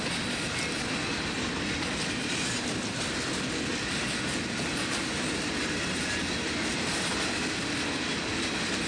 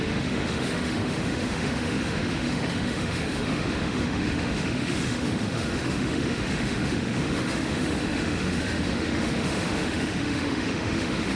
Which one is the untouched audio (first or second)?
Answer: first